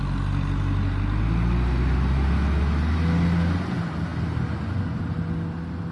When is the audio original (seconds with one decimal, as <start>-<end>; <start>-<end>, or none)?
0.0-5.9